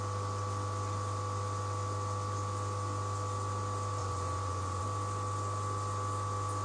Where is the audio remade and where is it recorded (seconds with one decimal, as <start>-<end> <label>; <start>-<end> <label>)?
0.0-4.0 recorded; 4.0-4.8 remade; 4.8-6.6 recorded